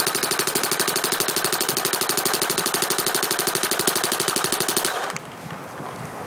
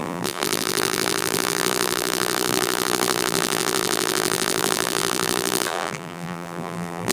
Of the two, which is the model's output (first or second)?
second